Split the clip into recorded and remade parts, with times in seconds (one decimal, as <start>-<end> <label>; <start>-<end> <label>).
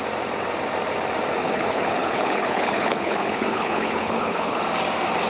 0.0-1.4 recorded; 1.4-4.6 remade; 4.6-5.3 recorded